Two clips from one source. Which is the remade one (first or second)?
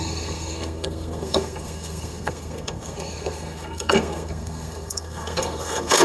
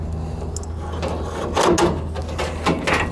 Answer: first